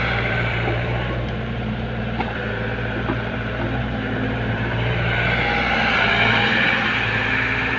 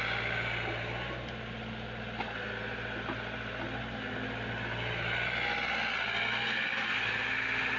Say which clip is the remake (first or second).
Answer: first